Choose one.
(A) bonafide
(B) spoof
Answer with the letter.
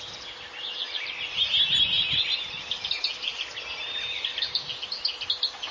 A